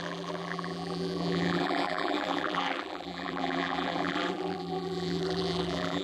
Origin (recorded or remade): remade